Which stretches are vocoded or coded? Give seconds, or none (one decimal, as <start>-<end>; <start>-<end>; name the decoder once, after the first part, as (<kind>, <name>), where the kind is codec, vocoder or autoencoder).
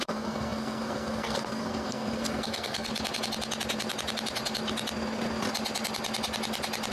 0.0-2.9 (codec, SNAC)